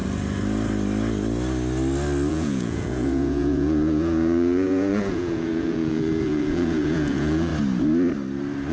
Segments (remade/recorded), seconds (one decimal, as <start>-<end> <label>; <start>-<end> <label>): 0.0-2.3 recorded; 2.3-7.5 remade; 7.5-8.7 recorded